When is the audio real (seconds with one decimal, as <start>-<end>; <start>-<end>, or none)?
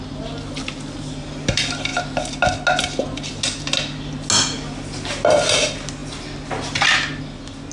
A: 0.0-7.7